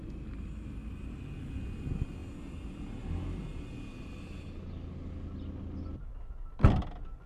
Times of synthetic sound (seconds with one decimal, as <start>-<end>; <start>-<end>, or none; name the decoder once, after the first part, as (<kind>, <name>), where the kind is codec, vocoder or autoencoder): 0.9-2.2 (vocoder, BigVGAN v2); 5.8-7.3